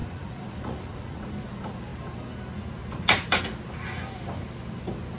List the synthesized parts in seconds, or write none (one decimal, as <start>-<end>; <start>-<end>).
0.0-1.2

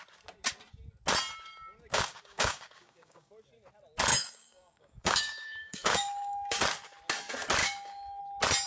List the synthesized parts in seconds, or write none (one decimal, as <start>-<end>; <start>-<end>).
1.9-3.3; 4.1-6.6; 7.6-8.2

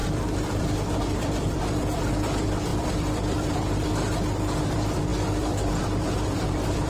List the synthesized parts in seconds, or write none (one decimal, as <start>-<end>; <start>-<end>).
0.0-6.9